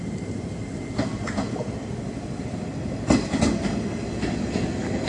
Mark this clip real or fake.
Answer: real